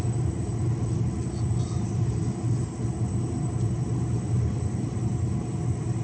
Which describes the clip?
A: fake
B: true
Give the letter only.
B